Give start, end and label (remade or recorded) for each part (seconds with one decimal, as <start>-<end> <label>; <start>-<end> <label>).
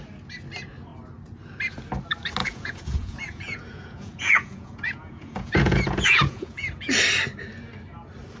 0.0-2.4 recorded; 2.4-6.9 remade; 6.9-8.4 recorded